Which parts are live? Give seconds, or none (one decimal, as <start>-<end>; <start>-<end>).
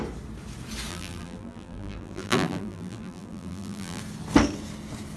0.0-0.9; 4.0-5.2